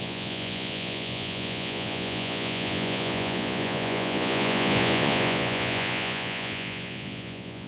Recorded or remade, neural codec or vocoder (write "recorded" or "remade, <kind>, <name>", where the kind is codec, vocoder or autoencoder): remade, vocoder, Vocos